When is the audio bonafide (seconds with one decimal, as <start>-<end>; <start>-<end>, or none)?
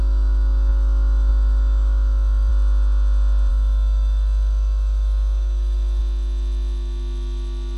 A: 2.5-3.5; 6.0-7.8